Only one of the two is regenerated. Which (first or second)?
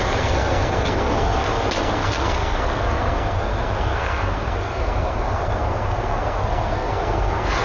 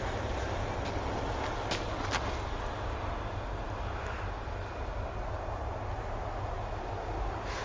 first